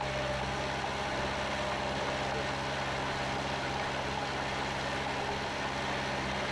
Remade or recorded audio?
recorded